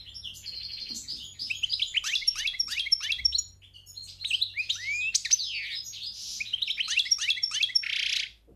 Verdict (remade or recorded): recorded